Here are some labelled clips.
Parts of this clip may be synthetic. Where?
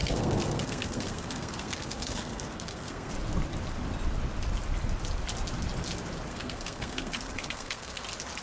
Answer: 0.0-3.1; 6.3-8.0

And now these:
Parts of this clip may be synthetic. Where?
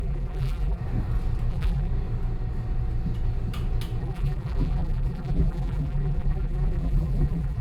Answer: 0.0-0.8; 1.5-1.9; 4.0-7.6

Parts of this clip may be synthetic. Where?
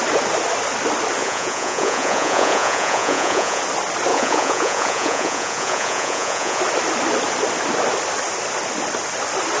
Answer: 1.2-3.6; 4.1-6.6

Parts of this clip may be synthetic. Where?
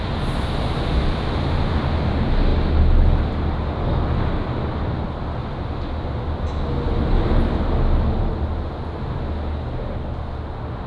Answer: none